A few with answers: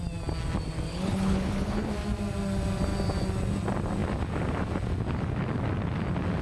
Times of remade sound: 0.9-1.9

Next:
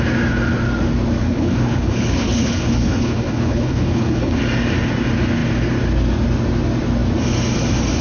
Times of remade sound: 1.2-4.4

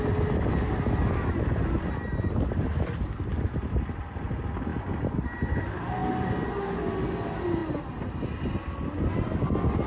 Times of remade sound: none